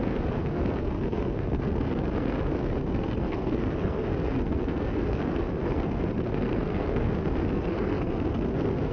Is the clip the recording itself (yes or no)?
no